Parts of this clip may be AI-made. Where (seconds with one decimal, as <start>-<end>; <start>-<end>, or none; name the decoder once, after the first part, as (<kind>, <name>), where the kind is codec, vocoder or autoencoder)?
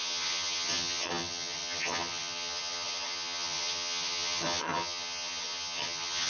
0.0-6.3 (vocoder, HiFi-GAN)